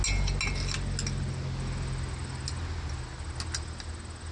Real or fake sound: real